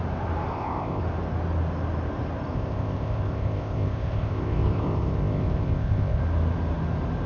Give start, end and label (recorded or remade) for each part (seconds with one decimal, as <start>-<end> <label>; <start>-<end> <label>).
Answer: 0.0-0.5 recorded; 0.5-1.0 remade; 1.0-2.5 recorded; 2.5-6.2 remade; 6.2-7.3 recorded